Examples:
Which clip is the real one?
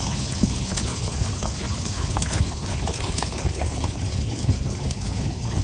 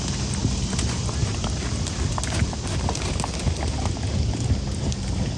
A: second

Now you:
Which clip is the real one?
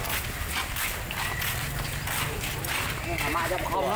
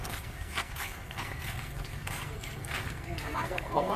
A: first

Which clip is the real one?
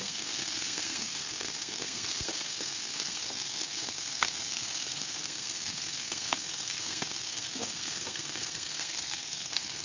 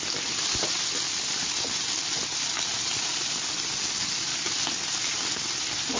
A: second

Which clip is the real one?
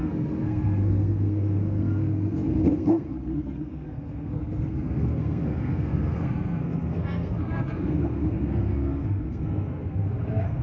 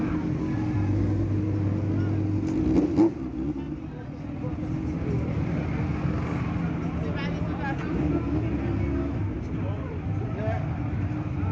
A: second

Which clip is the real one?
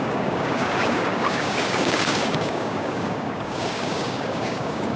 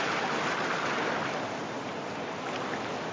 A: second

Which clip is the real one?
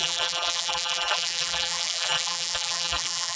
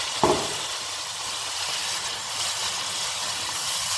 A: second